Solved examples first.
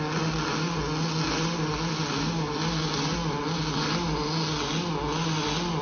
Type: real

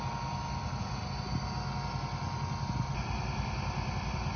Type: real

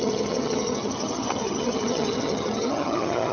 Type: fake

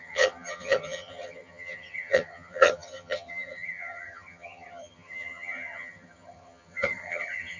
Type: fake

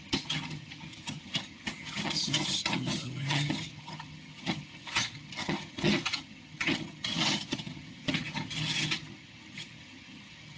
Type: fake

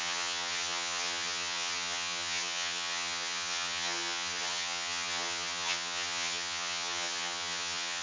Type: fake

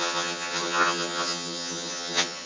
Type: fake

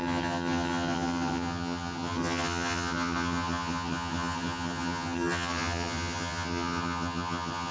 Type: fake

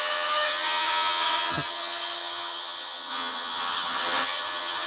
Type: fake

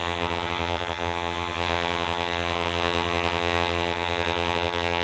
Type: fake